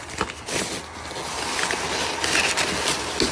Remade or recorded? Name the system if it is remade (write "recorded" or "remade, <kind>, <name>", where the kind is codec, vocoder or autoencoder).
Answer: recorded